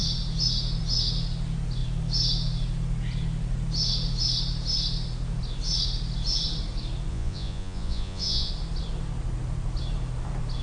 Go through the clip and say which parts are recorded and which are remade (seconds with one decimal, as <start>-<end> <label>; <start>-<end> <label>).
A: 0.0-7.1 recorded; 7.1-8.5 remade; 8.5-10.6 recorded